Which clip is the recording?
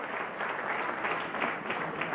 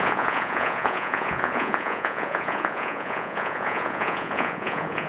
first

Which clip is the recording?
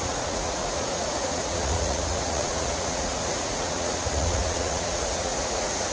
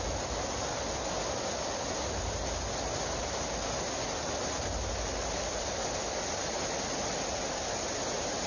second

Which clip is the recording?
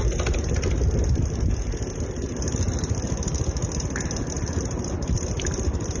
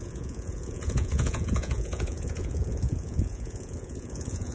first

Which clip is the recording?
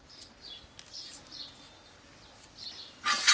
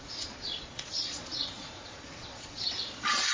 first